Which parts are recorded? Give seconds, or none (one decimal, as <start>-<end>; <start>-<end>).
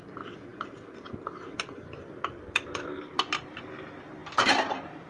none